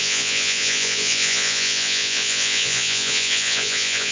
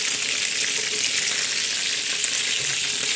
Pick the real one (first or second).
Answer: second